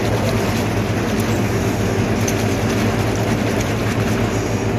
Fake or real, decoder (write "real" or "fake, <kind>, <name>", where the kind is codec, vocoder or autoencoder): real